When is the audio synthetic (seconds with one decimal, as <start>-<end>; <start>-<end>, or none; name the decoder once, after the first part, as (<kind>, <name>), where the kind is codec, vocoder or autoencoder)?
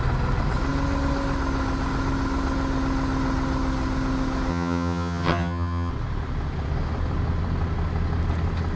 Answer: 4.5-5.9 (vocoder, HiFi-GAN)